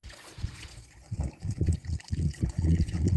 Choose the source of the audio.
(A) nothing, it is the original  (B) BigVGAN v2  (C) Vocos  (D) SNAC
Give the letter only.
C